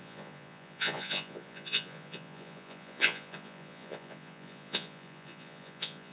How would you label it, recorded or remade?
remade